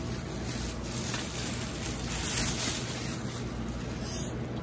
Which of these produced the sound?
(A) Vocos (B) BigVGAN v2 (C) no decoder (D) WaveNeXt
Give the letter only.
C